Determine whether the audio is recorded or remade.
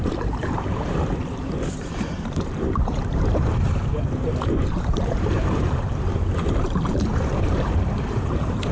remade